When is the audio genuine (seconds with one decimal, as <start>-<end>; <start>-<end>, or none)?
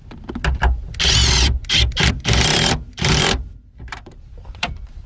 0.0-2.5